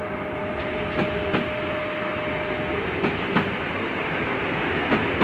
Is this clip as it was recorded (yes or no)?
yes